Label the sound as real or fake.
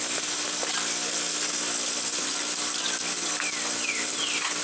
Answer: real